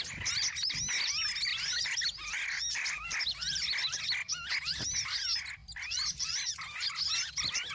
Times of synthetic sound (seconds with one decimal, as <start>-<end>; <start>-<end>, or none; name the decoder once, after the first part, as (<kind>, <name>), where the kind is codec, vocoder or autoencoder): 1.5-4.0 (vocoder, BigVGAN v2); 5.6-6.6